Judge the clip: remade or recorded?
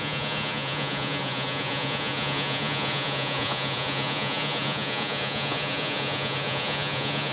remade